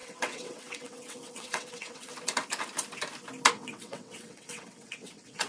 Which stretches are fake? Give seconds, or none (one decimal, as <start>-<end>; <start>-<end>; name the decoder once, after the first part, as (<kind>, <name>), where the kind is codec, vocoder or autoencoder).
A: 0.0-2.1 (vocoder, WaveNeXt); 3.5-5.5